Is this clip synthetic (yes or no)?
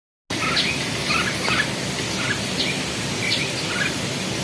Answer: no